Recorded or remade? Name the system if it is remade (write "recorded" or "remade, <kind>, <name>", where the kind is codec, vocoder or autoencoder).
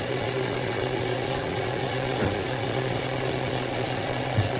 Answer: remade, vocoder, Vocos